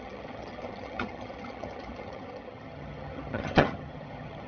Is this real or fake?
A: fake